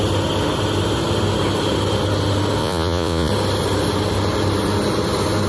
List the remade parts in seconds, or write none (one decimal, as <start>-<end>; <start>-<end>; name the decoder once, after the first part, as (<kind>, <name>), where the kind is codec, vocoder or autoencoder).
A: 2.6-3.3 (vocoder, Vocos)